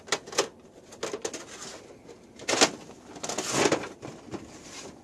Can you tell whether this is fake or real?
real